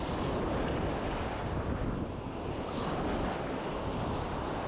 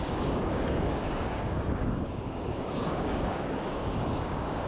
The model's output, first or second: second